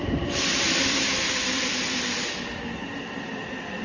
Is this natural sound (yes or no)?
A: no